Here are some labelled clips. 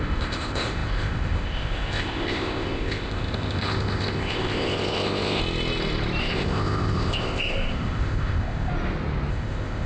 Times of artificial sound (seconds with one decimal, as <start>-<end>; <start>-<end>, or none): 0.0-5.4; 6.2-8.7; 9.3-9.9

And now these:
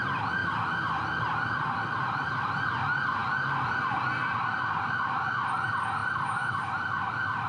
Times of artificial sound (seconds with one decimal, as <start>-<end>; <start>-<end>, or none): none

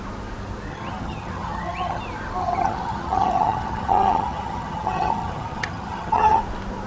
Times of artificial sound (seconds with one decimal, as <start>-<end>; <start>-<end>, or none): 0.7-2.0; 2.4-6.4

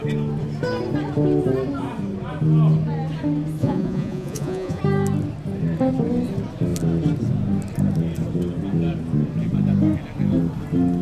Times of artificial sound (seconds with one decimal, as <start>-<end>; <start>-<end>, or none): 3.6-4.8

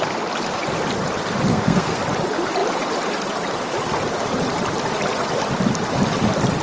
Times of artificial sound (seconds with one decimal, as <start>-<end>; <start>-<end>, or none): 1.5-2.0

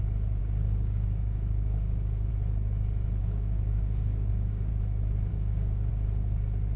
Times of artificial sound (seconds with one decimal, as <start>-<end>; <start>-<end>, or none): 0.4-2.3; 3.2-4.7; 5.3-5.9